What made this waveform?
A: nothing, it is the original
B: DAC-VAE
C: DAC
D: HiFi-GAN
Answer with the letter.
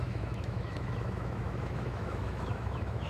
B